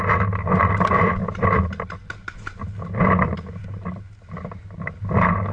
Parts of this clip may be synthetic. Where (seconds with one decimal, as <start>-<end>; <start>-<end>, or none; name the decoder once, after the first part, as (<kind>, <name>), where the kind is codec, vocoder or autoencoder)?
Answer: none